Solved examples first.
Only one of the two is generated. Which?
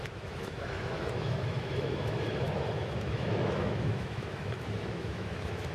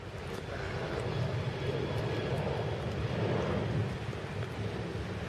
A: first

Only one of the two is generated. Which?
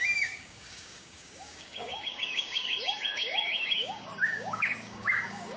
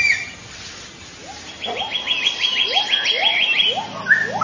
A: first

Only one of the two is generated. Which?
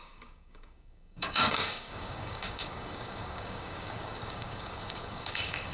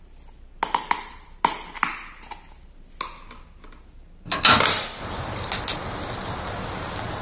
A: first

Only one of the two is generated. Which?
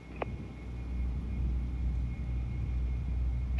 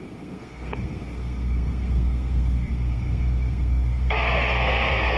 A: second